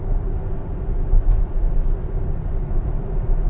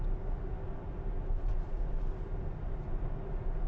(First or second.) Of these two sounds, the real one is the second